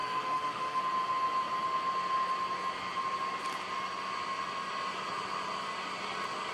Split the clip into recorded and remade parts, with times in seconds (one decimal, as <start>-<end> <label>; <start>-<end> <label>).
0.0-0.8 remade; 0.8-6.5 recorded